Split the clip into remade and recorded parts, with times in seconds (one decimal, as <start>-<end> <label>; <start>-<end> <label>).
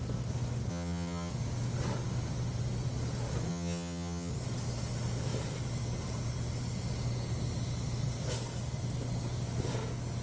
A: 0.0-0.7 recorded; 0.7-1.3 remade; 1.3-3.5 recorded; 3.5-4.3 remade; 4.3-10.2 recorded